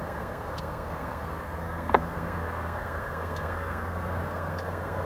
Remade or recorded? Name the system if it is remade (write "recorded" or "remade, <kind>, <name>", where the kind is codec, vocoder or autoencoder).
remade, codec, SNAC